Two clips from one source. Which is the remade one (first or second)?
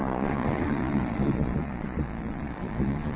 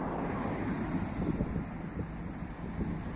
first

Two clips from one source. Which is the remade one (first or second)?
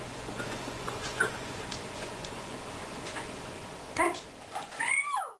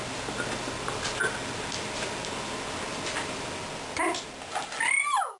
first